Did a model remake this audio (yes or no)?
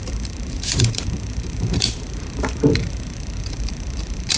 yes